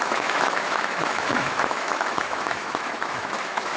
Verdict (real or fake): fake